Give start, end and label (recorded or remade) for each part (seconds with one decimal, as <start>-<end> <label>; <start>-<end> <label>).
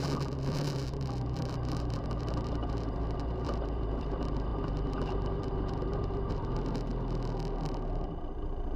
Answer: 0.0-6.9 remade; 6.9-7.9 recorded; 7.9-8.8 remade